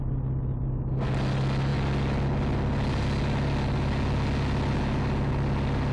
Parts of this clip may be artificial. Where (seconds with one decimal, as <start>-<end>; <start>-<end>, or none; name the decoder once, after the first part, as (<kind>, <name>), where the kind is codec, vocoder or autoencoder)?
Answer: none